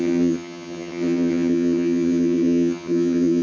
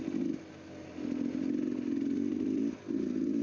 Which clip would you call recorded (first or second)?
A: second